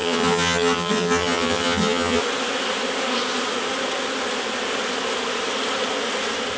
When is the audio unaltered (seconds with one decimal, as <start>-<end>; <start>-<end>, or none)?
2.2-6.6